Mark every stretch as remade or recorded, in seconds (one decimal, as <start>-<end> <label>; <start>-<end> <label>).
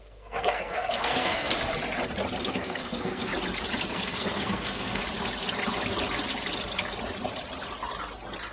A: 0.0-1.5 remade; 1.5-2.4 recorded; 2.4-3.3 remade; 3.3-3.9 recorded; 3.9-5.0 remade; 5.0-8.5 recorded